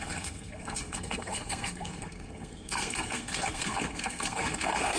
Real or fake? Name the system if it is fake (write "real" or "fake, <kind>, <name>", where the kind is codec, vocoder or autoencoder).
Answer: fake, codec, SNAC